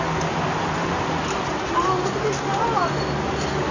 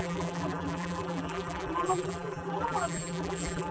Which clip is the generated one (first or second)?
second